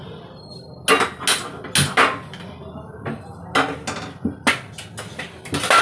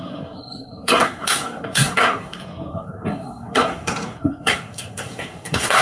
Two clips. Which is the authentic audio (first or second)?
first